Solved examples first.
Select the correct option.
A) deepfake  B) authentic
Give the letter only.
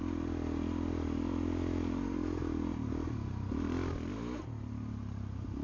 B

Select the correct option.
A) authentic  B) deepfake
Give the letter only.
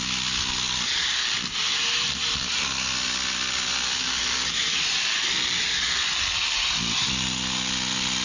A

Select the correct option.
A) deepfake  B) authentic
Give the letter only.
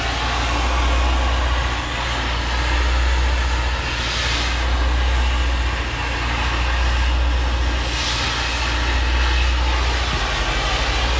B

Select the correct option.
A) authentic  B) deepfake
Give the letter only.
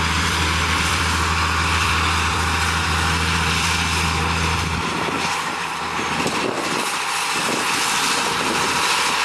B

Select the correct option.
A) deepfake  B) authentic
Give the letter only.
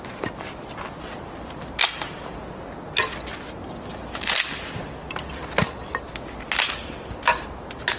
B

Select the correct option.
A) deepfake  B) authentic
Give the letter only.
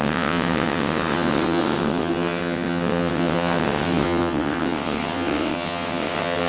A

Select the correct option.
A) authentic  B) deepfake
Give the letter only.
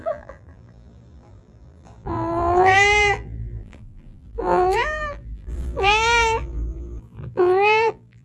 B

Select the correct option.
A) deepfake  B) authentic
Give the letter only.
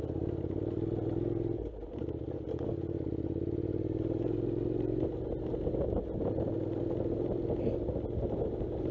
B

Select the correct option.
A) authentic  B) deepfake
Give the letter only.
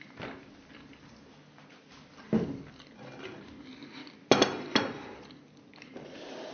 A